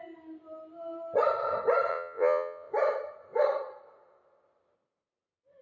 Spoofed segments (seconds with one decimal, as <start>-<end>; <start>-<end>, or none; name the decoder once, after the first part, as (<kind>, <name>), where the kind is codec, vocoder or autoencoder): 1.9-2.7 (vocoder, Vocos)